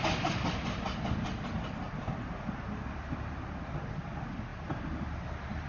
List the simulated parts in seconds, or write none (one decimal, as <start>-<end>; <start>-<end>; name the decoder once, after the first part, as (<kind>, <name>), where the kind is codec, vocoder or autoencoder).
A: none